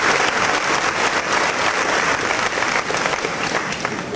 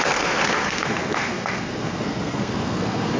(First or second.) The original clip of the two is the first